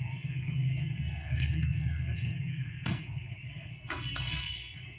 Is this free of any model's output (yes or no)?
no